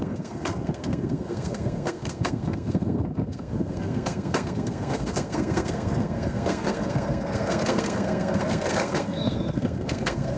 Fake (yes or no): yes